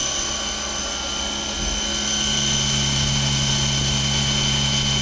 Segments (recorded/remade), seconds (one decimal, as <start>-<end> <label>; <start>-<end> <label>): 0.0-5.0 recorded